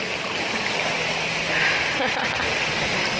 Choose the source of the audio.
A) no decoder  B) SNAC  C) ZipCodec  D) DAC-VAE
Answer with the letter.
A